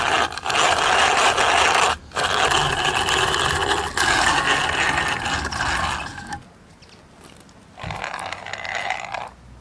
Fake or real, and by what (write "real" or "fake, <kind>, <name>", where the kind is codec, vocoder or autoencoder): real